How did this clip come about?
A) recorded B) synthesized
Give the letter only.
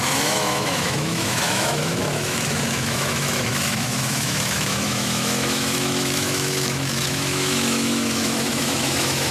B